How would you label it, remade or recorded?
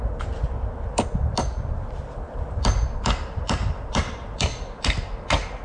remade